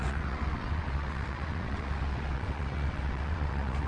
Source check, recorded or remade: remade